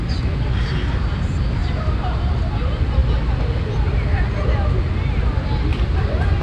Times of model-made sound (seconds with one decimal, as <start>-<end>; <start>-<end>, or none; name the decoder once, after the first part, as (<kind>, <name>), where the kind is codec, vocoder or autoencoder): 1.6-2.2 (vocoder, BigVGAN v2); 5.7-6.4